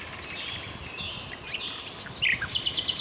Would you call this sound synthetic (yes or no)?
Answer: no